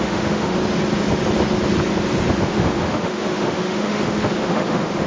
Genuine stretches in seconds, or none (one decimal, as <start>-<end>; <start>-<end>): 0.6-2.3

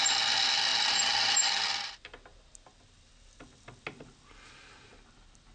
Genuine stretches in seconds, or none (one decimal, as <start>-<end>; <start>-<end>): 0.0-5.5

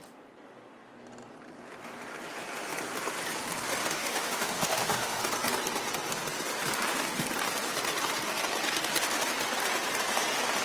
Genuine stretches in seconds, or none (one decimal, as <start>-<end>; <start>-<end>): 0.0-3.8; 5.2-10.6

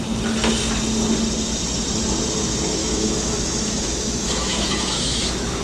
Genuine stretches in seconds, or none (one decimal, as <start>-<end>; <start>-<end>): 0.0-2.8

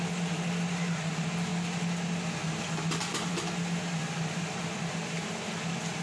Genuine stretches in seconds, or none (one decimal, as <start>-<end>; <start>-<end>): 0.0-6.0

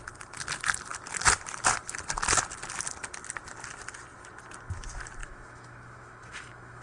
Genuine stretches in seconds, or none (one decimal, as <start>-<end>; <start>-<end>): 0.0-5.2